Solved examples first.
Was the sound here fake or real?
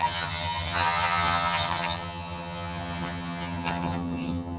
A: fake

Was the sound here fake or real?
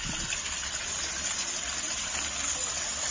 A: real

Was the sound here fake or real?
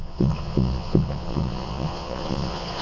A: fake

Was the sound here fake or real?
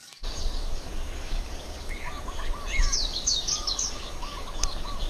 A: fake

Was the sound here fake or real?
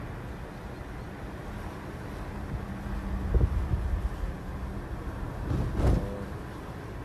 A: real